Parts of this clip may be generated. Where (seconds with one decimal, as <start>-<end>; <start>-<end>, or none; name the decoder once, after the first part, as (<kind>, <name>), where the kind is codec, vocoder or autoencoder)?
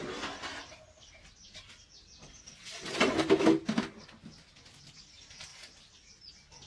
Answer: 0.0-1.3 (vocoder, BigVGAN v2); 1.8-3.4; 5.5-6.3